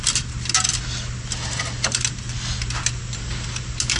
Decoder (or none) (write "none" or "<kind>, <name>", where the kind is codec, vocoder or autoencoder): none